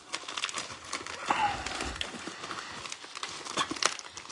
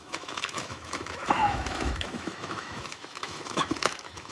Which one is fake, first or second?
second